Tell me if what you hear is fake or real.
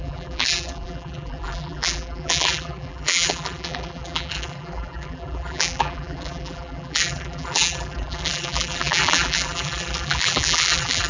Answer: fake